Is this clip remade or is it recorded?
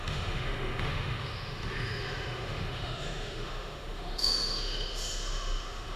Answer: remade